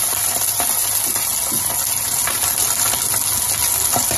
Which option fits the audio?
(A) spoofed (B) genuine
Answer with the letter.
B